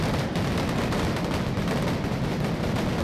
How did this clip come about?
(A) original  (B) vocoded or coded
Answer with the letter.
A